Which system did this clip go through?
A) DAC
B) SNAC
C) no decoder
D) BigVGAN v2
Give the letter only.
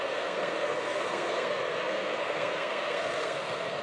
B